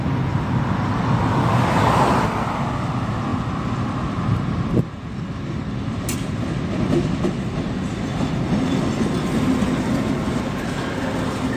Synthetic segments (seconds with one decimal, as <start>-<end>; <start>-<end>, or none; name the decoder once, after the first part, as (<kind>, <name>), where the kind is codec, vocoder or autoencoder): none